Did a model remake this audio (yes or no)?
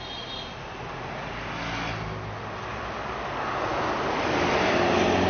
no